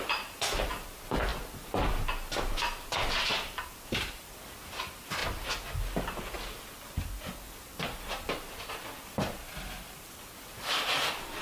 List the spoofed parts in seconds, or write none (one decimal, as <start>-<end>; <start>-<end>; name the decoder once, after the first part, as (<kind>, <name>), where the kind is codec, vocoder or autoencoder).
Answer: 0.0-1.3 (vocoder, BigVGAN v2); 2.4-5.2; 8.6-11.4